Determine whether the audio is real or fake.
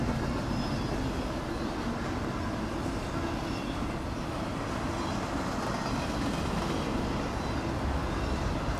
real